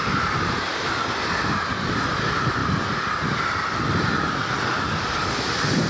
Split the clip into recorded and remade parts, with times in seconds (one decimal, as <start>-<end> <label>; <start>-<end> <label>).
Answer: 0.0-2.6 remade; 2.6-5.3 recorded; 5.3-5.9 remade